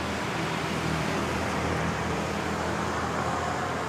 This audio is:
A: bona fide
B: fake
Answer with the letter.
B